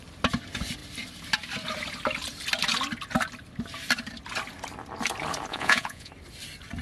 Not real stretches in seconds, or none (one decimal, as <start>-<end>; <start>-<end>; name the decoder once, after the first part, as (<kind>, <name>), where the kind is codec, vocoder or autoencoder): 5.5-6.1 (vocoder, Vocos)

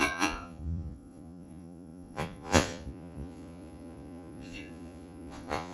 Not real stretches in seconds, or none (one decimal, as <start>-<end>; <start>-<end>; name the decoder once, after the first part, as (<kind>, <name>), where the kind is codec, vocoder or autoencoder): 0.0-5.7 (vocoder, Vocos)

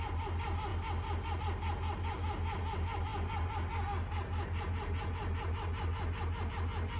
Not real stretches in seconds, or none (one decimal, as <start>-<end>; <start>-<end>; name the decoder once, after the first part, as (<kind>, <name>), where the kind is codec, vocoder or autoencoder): none

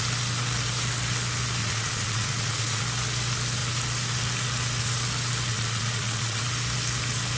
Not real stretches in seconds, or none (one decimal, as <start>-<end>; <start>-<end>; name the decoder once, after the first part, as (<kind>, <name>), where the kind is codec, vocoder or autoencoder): 1.6-2.8 (vocoder, Vocos); 5.5-6.4

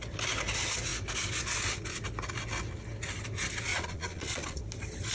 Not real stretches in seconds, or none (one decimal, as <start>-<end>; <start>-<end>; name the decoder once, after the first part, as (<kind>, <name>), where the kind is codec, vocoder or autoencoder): 3.7-4.6 (vocoder, Vocos)

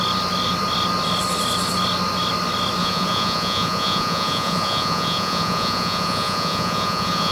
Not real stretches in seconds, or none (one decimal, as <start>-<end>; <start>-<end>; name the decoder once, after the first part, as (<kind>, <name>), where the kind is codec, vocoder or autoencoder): 2.8-7.3 (vocoder, Vocos)

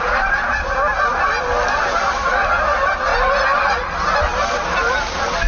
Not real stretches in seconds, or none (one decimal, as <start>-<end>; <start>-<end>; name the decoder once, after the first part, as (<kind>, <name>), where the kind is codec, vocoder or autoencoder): none

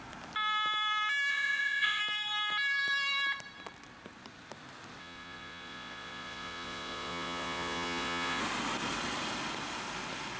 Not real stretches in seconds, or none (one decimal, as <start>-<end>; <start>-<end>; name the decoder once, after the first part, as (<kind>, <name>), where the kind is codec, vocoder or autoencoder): 1.3-2.0 (vocoder, Vocos); 5.0-8.4